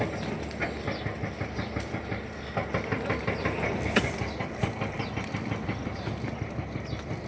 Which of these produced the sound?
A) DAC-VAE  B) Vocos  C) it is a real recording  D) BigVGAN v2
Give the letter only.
C